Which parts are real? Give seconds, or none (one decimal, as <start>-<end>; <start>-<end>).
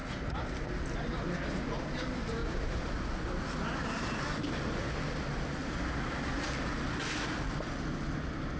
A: 0.0-2.4; 2.9-5.6; 6.3-8.6